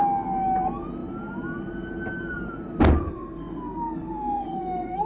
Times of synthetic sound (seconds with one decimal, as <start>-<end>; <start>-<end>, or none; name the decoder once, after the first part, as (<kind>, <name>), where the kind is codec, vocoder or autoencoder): 3.0-5.1 (codec, SNAC)

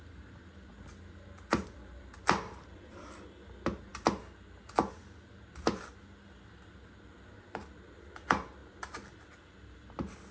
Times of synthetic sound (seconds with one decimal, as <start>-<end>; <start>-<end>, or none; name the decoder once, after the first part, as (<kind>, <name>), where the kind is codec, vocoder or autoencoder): none

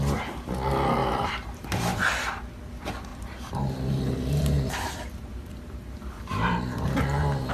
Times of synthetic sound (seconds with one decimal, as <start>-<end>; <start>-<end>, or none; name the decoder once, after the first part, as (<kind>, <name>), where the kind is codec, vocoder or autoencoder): 1.0-2.3 (vocoder, BigVGAN v2); 3.1-7.5